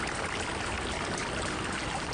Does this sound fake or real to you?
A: real